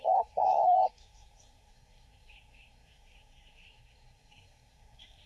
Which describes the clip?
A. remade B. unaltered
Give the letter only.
A